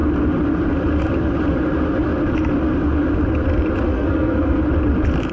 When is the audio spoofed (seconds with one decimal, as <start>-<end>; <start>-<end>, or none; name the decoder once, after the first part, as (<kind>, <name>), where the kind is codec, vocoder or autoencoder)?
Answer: 3.9-4.6 (codec, SNAC)